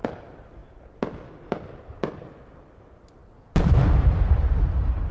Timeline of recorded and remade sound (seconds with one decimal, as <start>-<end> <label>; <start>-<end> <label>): 0.0-5.1 recorded